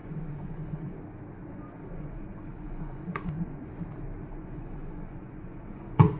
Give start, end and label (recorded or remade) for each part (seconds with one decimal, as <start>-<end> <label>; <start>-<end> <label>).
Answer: 0.0-0.9 remade; 0.9-1.5 recorded; 1.5-3.7 remade; 3.7-4.3 recorded; 4.3-6.2 remade